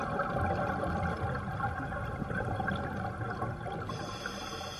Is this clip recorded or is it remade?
recorded